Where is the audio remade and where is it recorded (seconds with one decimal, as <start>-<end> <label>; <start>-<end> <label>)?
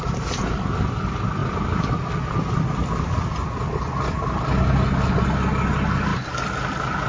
0.0-1.4 recorded; 1.4-1.9 remade; 1.9-7.1 recorded